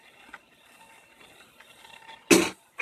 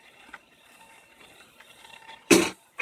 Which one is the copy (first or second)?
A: second